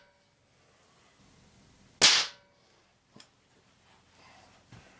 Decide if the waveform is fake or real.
real